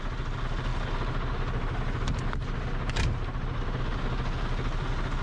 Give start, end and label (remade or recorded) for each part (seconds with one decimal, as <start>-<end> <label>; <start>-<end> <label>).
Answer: 0.0-5.2 recorded